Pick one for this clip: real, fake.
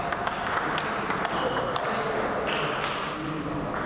real